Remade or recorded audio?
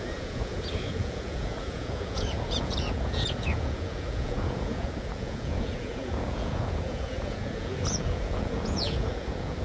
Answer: remade